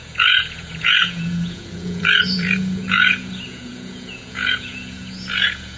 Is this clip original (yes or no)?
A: no